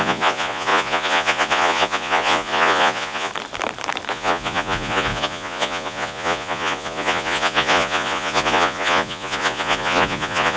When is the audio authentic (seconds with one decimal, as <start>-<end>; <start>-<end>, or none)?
3.3-4.1